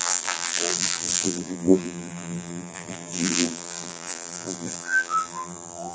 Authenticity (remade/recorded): remade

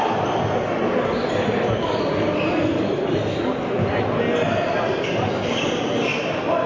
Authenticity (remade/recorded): recorded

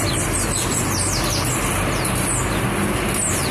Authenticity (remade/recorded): recorded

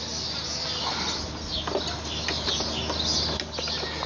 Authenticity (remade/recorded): recorded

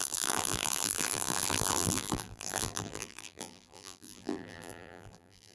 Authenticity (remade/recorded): remade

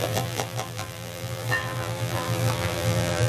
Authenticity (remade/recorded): remade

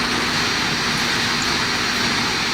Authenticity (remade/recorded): recorded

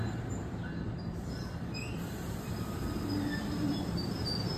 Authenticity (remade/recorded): remade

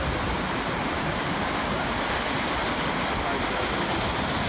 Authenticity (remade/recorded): recorded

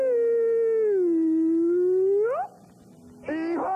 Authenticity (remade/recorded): recorded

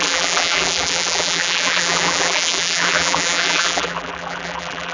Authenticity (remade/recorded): remade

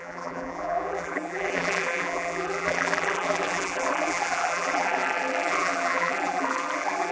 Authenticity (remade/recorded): remade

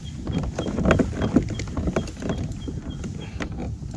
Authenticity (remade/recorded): recorded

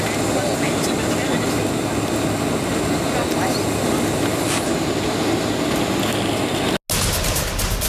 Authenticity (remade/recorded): recorded